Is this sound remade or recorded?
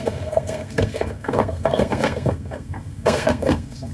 remade